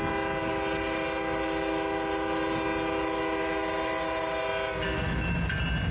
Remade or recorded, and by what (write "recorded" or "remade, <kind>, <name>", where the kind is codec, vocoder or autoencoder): recorded